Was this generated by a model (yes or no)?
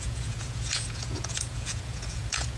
yes